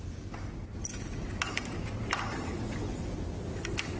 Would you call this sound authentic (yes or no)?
yes